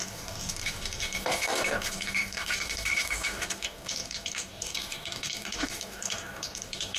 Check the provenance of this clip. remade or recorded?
remade